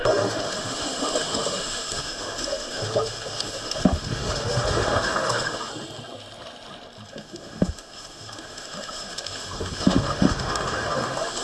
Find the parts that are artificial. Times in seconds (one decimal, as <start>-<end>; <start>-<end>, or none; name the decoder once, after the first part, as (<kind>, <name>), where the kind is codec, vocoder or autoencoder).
0.0-5.7 (autoencoder, DAC-VAE); 7.1-11.4